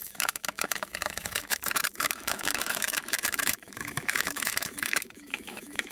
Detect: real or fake fake